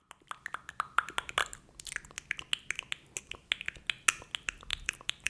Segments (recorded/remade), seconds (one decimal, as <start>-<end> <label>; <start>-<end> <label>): 0.0-4.7 recorded; 4.7-5.3 remade